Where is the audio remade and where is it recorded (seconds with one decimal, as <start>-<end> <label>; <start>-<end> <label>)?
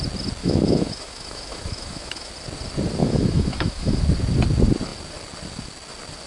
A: 0.0-0.4 recorded; 0.4-2.3 remade; 2.3-3.0 recorded; 3.0-4.0 remade; 4.0-6.3 recorded